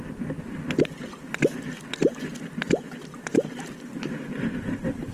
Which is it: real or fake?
real